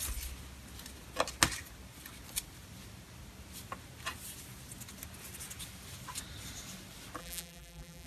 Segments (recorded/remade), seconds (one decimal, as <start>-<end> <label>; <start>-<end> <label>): 0.0-7.2 recorded; 7.2-8.1 remade